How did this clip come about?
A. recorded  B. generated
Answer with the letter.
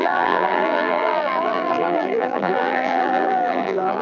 B